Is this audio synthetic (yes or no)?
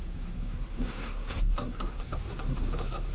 yes